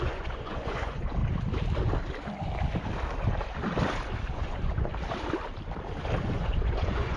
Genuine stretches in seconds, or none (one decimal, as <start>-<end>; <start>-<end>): 1.2-4.3; 4.9-6.2